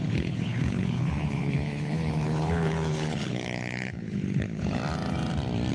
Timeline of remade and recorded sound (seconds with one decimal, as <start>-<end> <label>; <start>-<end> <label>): 0.0-4.8 remade; 4.8-5.7 recorded